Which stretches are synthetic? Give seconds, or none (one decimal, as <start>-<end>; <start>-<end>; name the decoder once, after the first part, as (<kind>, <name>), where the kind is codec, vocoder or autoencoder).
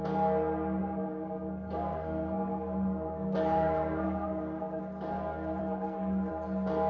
0.8-4.8 (codec, SNAC); 5.6-6.3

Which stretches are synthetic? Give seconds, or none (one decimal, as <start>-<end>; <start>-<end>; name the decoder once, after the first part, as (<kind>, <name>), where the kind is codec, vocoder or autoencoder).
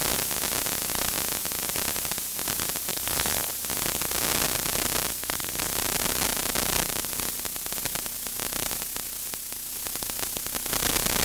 2.9-3.5 (codec, SNAC); 5.1-5.7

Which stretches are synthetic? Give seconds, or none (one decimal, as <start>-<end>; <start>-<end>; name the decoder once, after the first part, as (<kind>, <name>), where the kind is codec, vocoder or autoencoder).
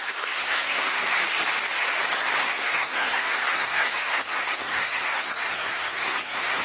0.0-1.0 (codec, SNAC); 2.4-6.6